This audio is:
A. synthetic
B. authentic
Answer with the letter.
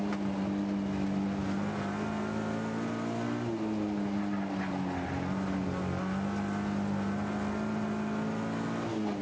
B